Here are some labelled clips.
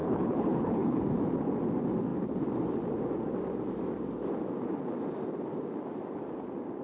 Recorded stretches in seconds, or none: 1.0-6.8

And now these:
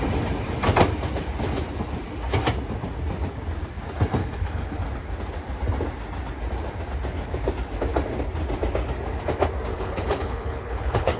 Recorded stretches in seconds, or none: 0.0-4.2; 4.8-9.7

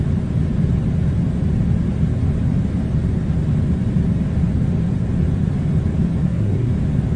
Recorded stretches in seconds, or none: 0.0-6.2; 6.7-7.2

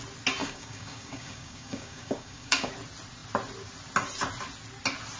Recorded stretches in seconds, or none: 0.0-0.4; 2.7-5.2

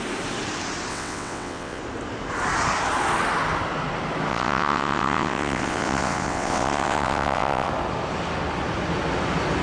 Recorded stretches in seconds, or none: 0.0-0.9; 1.8-4.3; 7.7-9.6

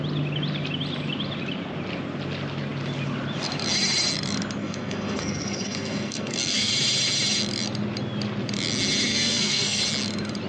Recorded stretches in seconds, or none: 0.0-4.6; 6.7-9.1; 9.8-10.5

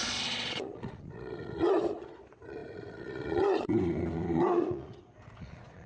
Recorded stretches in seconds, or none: none

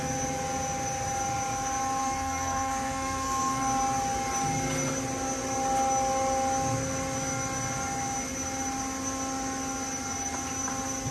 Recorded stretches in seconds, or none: 0.0-2.0; 3.6-11.1